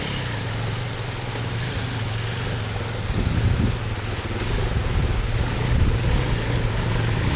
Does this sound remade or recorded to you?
recorded